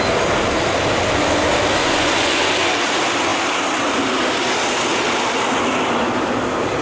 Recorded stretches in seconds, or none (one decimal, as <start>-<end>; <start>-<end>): 0.0-1.8; 2.5-6.8